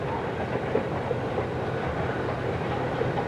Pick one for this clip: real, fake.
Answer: real